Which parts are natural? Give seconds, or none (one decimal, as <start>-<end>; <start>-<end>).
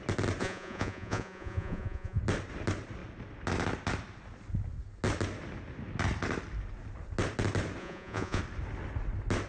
0.0-0.4; 2.2-7.8; 8.4-9.5